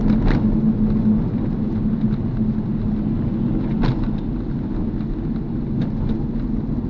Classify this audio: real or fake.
real